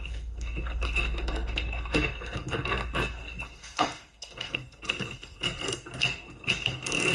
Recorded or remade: remade